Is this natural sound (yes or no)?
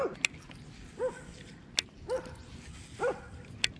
yes